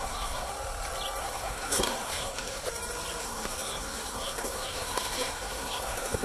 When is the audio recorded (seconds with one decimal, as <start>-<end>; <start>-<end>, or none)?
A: 0.5-1.2; 2.6-3.2